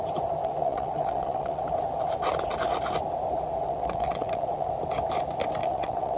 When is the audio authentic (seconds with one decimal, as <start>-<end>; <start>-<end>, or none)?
0.0-0.4; 1.6-3.6; 4.7-5.6